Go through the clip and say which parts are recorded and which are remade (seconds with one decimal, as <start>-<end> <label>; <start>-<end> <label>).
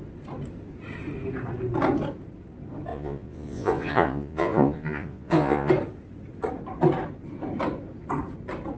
0.0-2.9 recorded; 2.9-5.7 remade; 5.7-8.8 recorded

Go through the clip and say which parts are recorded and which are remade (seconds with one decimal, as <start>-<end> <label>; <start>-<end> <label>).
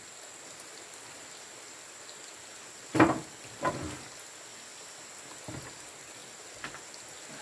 0.0-7.4 recorded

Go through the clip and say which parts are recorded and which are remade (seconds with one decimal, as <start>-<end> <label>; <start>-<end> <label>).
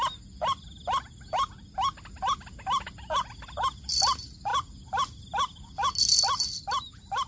0.0-7.3 recorded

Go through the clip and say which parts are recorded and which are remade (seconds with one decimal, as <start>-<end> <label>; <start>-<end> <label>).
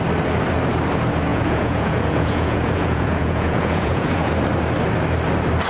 0.0-1.3 recorded; 1.3-4.3 remade; 4.3-5.7 recorded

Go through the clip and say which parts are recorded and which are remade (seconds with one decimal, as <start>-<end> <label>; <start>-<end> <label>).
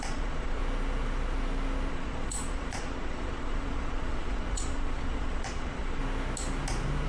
0.0-0.6 remade; 0.6-1.9 recorded; 1.9-6.0 remade; 6.0-7.1 recorded